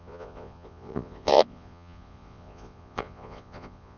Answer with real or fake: fake